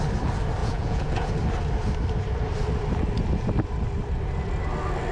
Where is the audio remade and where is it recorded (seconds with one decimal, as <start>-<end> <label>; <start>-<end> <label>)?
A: 0.0-0.6 recorded; 0.6-1.3 remade; 1.3-5.1 recorded